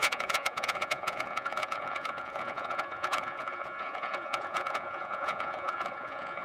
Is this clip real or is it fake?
fake